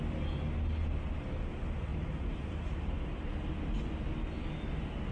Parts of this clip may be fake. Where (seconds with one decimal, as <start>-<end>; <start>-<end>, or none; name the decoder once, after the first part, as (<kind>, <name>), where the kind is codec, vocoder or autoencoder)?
1.9-3.3 (vocoder, BigVGAN v2)